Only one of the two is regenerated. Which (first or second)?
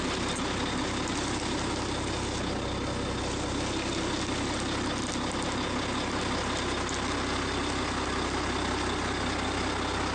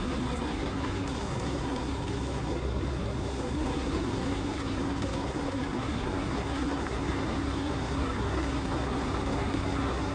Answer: second